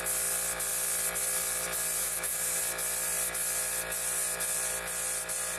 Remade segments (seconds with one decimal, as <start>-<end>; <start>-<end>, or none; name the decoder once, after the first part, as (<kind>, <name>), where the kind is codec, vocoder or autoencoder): 2.0-2.6 (autoencoder, DAC-VAE)